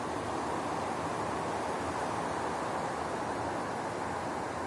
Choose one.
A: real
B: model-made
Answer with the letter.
A